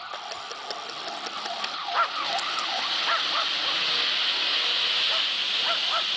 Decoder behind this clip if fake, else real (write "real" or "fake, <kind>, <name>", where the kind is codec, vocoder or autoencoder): real